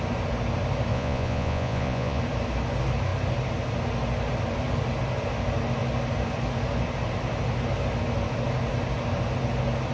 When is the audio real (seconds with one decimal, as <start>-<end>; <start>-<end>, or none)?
0.0-0.9; 2.2-9.9